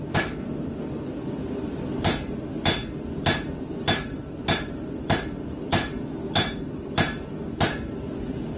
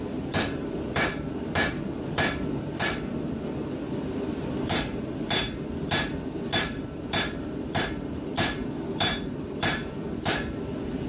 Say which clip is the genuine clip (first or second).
first